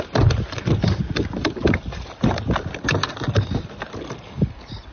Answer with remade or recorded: recorded